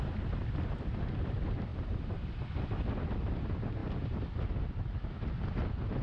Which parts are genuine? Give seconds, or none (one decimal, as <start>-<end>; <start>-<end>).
0.0-1.7; 2.8-6.0